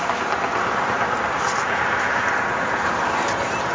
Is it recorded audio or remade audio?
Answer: remade